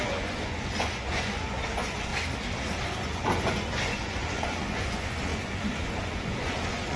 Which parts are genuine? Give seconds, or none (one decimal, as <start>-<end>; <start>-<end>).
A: 2.1-2.8